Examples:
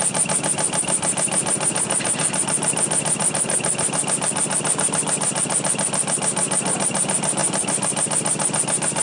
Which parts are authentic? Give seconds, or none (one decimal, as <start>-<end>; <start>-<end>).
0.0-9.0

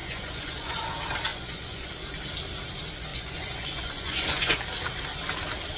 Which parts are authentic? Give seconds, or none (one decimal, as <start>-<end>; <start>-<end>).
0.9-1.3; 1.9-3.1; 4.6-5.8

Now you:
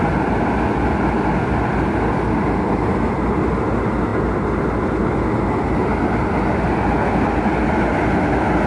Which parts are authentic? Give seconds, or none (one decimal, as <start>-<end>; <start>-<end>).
0.0-8.7